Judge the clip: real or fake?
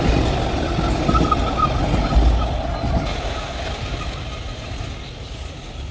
real